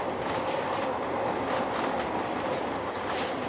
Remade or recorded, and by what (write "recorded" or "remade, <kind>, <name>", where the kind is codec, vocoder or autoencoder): recorded